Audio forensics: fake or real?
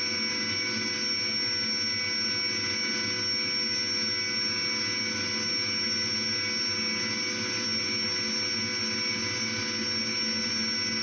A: real